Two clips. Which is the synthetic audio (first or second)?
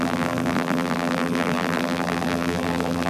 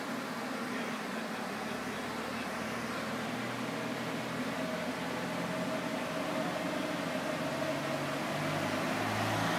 first